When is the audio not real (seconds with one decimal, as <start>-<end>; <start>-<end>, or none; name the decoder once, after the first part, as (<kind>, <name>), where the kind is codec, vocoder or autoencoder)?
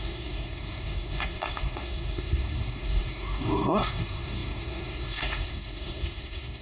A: 0.0-6.6 (codec, SNAC)